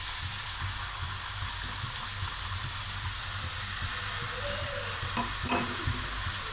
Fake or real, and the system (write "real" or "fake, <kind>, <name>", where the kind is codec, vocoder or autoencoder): real